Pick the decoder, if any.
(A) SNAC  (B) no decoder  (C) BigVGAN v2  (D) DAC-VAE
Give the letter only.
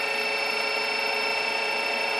B